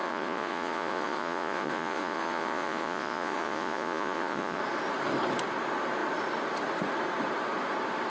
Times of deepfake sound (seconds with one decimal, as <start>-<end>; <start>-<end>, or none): 0.0-4.6